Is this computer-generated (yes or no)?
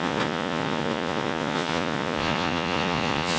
yes